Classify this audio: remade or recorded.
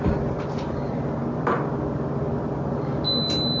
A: recorded